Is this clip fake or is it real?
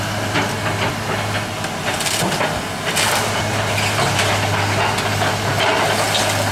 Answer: real